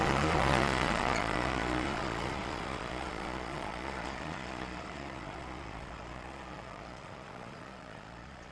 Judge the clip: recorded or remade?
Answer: remade